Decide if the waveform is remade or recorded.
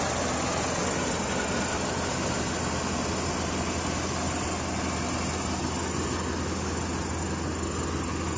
recorded